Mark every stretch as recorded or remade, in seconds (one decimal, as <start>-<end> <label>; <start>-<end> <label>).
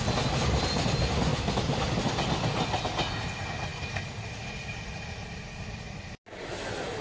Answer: 0.0-7.0 recorded